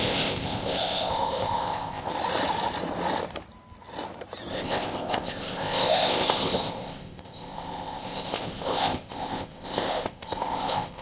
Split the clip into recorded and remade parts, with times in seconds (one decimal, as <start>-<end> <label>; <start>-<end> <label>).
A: 0.0-2.1 remade; 2.1-4.5 recorded; 4.5-11.0 remade